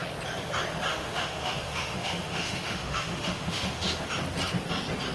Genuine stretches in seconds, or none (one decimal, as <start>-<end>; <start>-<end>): 0.0-0.9; 4.0-5.1